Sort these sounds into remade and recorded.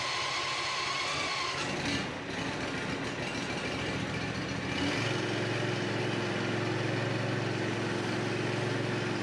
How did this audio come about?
recorded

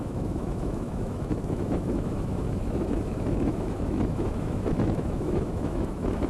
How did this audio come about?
remade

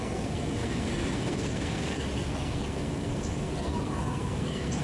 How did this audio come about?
remade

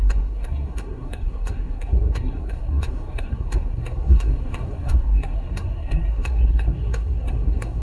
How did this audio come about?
remade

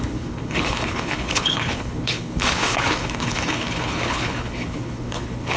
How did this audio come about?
remade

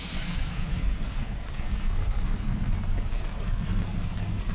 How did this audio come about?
remade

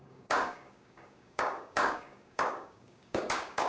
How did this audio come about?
remade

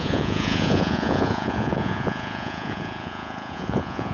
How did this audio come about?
remade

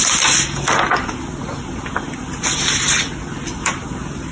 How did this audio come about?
recorded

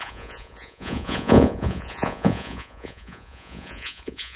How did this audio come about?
remade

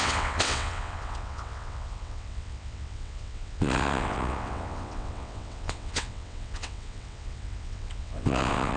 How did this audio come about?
remade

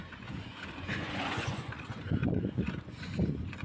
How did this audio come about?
remade